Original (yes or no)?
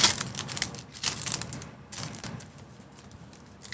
yes